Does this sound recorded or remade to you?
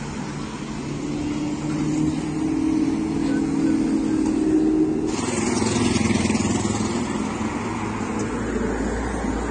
recorded